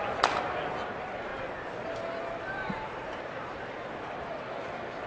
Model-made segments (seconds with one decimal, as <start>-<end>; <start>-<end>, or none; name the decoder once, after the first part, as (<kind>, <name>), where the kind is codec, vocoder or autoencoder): 1.3-4.2 (vocoder, BigVGAN v2)